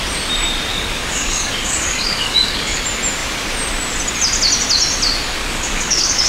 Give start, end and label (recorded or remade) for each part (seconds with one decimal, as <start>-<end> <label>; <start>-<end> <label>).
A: 0.0-0.7 recorded; 0.7-2.8 remade; 2.8-5.4 recorded; 5.4-6.3 remade